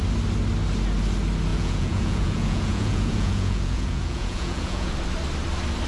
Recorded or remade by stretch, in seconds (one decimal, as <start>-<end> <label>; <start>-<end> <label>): 0.0-1.5 recorded; 1.5-4.9 remade; 4.9-5.9 recorded